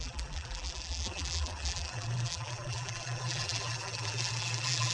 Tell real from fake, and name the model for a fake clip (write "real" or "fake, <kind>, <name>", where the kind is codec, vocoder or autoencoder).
fake, vocoder, BigVGAN v2